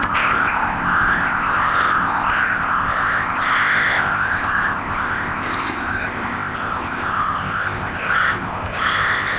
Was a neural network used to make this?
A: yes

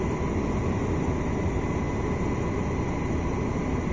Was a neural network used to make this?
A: no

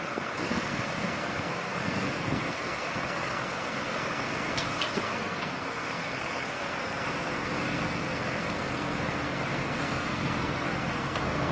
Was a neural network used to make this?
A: yes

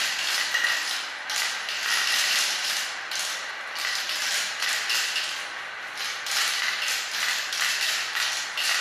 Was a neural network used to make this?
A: no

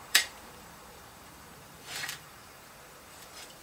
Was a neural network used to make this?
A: yes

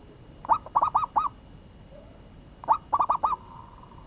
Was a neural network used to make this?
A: no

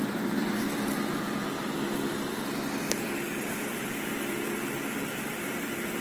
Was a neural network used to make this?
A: no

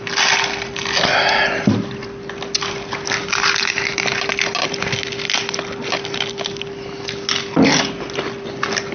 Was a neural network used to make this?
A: no